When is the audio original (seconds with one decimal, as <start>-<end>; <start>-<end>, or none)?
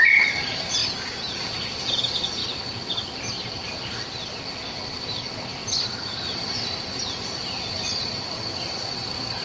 0.8-1.4; 2.4-3.7